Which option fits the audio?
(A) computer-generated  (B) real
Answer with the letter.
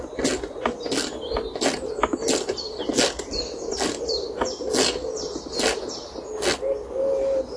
B